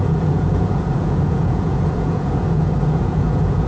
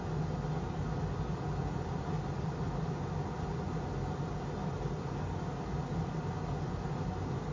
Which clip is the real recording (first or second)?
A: second